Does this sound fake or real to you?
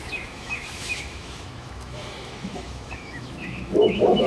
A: fake